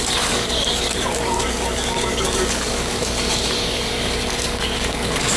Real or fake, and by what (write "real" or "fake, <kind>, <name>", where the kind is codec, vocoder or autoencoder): fake, codec, DAC